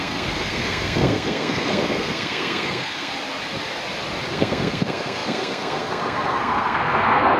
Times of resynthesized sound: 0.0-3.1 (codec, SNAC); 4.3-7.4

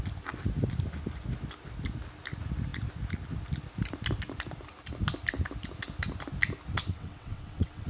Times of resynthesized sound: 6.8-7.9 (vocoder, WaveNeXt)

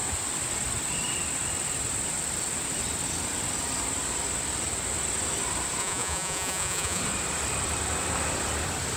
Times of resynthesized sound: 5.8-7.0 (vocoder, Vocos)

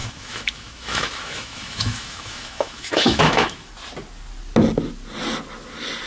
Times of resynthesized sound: 0.0-3.7 (autoencoder, DAC-VAE)

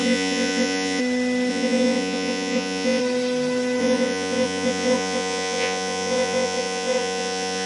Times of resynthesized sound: 0.0-1.0 (vocoder, Vocos); 1.5-3.0; 3.8-7.7

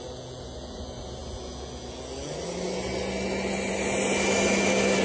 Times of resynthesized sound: none

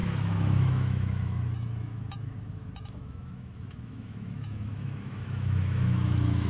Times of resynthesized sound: 0.0-6.5 (autoencoder, DAC-VAE)